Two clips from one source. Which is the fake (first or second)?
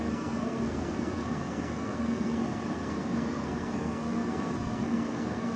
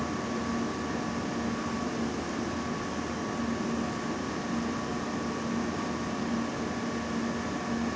first